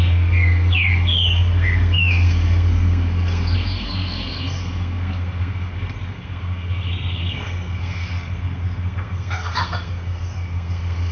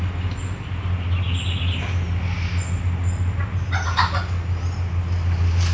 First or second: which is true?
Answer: second